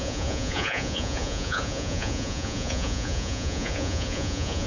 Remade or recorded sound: remade